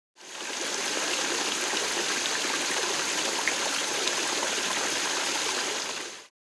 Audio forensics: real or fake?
real